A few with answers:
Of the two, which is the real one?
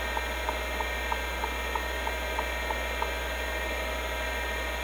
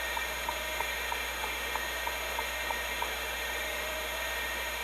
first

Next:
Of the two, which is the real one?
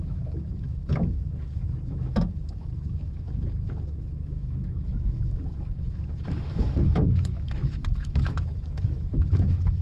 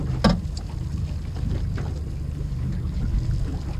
second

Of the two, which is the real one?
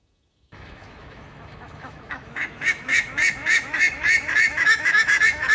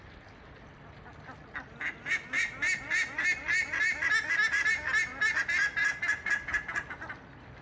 second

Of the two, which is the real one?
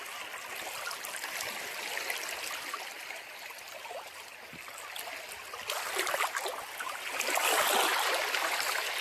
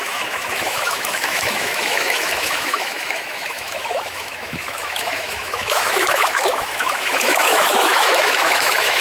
first